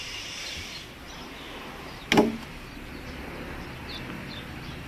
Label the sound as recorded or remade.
recorded